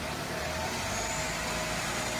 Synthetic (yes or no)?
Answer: no